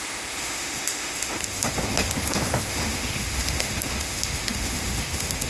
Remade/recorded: remade